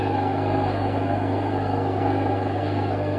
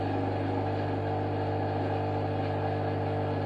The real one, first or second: second